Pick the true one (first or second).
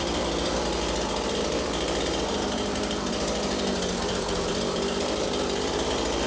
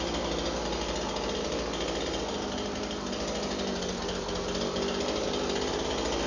second